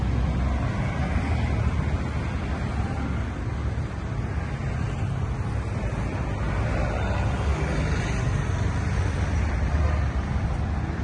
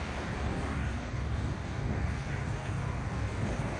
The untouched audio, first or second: first